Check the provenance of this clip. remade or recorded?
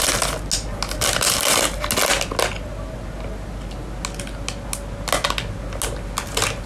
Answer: recorded